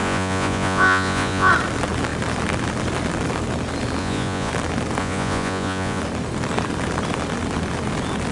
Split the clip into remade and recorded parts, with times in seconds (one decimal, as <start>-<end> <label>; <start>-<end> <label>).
0.0-1.5 remade; 1.5-4.0 recorded; 4.0-4.5 remade; 4.5-5.0 recorded; 5.0-6.0 remade; 6.0-8.3 recorded